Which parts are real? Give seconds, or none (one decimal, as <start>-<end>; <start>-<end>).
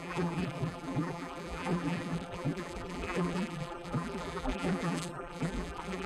none